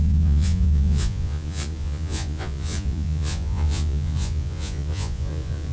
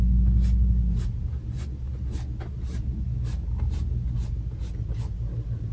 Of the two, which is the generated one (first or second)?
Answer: first